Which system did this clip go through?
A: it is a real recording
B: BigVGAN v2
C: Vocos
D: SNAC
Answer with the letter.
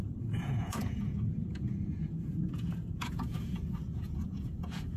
C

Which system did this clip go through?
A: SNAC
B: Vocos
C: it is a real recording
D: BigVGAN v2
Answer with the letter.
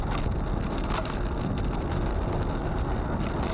C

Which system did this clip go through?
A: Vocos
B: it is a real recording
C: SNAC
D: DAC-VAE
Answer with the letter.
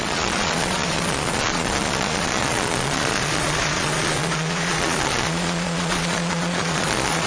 A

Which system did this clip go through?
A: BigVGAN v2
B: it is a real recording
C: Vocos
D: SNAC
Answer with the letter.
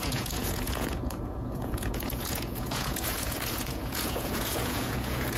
C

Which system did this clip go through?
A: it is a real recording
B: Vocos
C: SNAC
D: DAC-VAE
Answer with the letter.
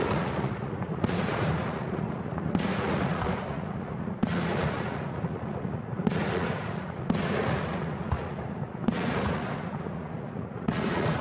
B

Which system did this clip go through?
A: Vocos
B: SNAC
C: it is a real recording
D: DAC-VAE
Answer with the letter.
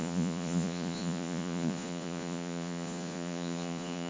A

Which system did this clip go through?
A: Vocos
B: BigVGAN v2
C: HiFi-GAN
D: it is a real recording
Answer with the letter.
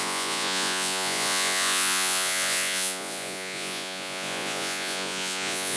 A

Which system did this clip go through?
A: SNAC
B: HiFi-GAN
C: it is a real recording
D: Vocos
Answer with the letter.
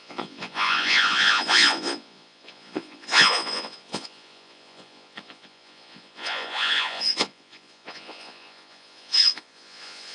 D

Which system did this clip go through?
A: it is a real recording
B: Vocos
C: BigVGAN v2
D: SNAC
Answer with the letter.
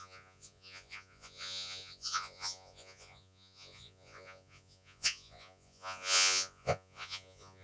B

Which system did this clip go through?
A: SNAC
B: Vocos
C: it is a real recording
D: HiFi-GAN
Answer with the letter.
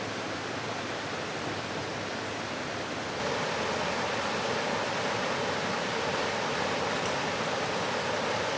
C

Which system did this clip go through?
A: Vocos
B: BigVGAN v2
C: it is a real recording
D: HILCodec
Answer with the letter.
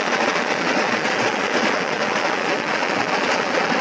A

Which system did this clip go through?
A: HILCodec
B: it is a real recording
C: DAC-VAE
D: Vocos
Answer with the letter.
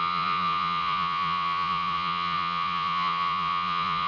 D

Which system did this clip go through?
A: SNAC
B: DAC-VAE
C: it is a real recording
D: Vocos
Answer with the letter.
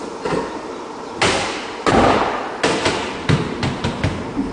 C